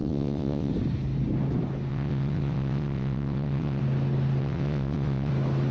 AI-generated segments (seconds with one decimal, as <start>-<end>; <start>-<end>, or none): 0.0-0.7; 1.9-3.8; 4.4-5.3

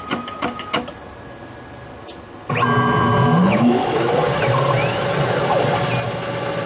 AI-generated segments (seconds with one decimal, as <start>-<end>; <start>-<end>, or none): 3.4-4.1